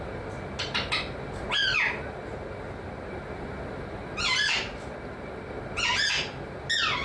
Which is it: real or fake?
real